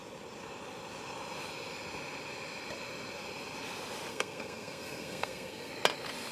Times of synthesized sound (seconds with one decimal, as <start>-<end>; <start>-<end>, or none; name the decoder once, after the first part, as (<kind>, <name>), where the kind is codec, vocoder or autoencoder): 4.1-5.7 (codec, SNAC)